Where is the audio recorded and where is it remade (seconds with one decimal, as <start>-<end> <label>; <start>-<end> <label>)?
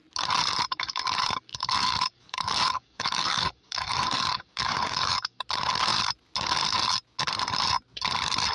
0.0-0.7 recorded; 0.7-5.4 remade; 5.4-8.5 recorded